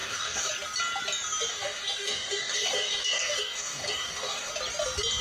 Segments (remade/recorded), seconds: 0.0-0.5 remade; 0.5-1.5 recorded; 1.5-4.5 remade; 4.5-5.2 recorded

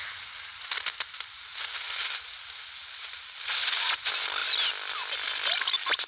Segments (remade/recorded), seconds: 0.0-6.1 recorded

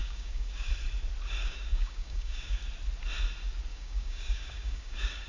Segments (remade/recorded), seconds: 0.0-0.7 remade; 0.7-1.4 recorded; 1.4-2.6 remade; 2.6-3.7 recorded; 3.7-5.3 remade

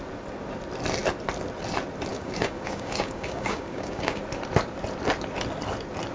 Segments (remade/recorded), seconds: 0.0-2.1 recorded; 2.1-4.2 remade; 4.2-6.1 recorded

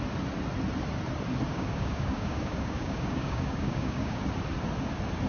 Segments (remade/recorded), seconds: 0.0-1.5 recorded; 1.5-4.2 remade; 4.2-5.3 recorded

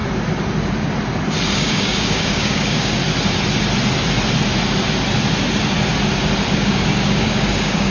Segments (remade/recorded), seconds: 0.0-1.5 recorded; 1.5-3.0 remade; 3.0-6.5 recorded; 6.5-7.9 remade

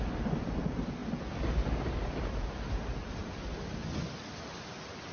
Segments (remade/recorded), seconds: 0.0-5.1 recorded

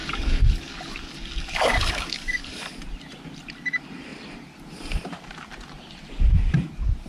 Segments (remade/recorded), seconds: 0.0-2.7 remade; 2.7-7.1 recorded